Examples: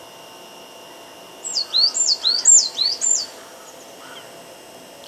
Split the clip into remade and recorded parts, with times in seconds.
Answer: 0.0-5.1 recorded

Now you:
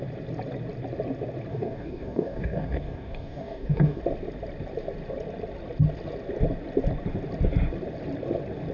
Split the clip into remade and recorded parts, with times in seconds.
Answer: 0.0-1.5 recorded; 1.5-4.0 remade; 4.0-8.7 recorded

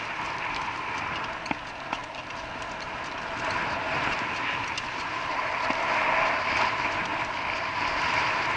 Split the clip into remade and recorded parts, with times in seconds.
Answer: 0.0-8.6 recorded

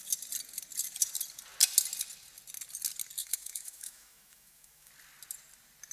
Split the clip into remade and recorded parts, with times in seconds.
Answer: 0.0-3.2 recorded; 3.2-4.9 remade; 4.9-5.9 recorded

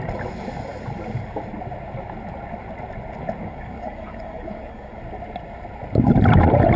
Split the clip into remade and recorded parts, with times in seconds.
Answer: 0.0-3.4 recorded; 3.4-5.0 remade; 5.0-6.8 recorded

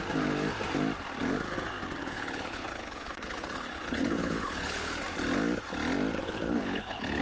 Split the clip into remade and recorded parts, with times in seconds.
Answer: 0.0-2.0 recorded; 2.0-5.0 remade; 5.0-6.2 recorded; 6.2-7.2 remade

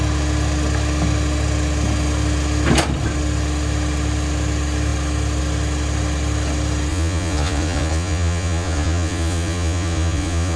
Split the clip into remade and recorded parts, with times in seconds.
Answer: 0.0-6.9 recorded; 6.9-10.6 remade

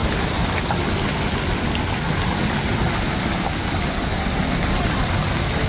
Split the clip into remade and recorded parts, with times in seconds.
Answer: 0.0-5.7 recorded